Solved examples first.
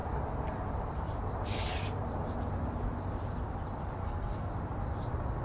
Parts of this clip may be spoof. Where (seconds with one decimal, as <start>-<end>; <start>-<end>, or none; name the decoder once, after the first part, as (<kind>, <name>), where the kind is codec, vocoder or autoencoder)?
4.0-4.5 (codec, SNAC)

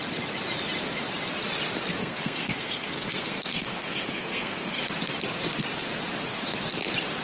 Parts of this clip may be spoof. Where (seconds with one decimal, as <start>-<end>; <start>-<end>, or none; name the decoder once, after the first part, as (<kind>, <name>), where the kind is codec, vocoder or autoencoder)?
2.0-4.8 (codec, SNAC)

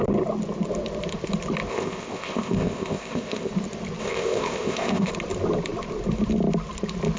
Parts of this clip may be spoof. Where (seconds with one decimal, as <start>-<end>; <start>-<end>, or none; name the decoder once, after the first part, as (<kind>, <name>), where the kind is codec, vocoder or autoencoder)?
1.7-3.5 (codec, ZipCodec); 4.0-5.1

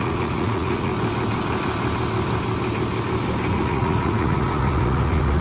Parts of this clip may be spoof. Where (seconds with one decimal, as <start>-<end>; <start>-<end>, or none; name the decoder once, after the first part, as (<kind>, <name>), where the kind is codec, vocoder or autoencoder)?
0.0-0.9 (vocoder, Vocos); 3.5-5.4

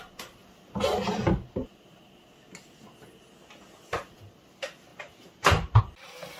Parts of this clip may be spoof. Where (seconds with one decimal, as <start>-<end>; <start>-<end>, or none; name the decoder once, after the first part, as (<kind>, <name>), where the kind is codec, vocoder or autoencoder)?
4.9-5.8 (vocoder, BigVGAN v2)

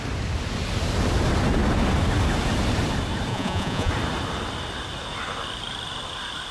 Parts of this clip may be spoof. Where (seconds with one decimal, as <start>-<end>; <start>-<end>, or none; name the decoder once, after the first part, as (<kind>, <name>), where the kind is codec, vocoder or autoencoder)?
3.3-3.9 (vocoder, Vocos)

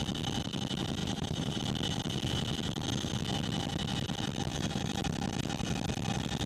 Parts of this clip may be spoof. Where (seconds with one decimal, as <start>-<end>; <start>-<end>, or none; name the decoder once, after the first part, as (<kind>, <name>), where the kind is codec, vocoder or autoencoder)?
1.0-1.6 (vocoder, BigVGAN v2); 4.5-5.0

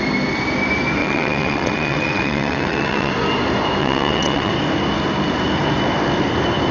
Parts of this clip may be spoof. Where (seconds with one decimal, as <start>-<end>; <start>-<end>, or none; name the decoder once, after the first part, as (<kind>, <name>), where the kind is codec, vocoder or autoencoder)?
1.0-3.1 (vocoder, WaveNeXt); 3.8-4.5